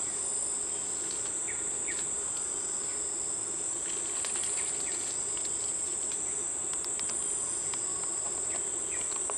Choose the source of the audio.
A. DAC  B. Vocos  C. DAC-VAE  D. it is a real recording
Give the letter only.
D